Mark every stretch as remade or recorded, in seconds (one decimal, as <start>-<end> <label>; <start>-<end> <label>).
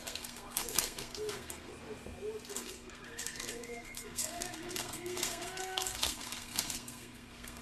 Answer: 0.0-1.7 remade; 1.7-2.5 recorded; 2.5-7.6 remade